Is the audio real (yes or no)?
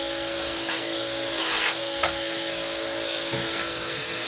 no